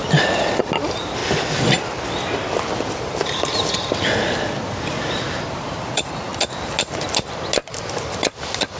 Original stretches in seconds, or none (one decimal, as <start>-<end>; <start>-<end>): 0.0-0.6; 1.2-2.9; 6.3-7.7